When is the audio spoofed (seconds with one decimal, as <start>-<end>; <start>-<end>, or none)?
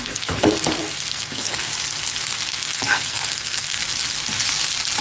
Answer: 0.0-1.7; 2.5-3.8